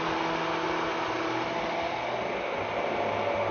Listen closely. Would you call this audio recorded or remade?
recorded